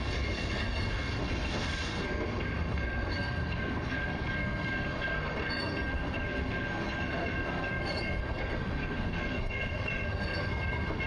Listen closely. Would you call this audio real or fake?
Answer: fake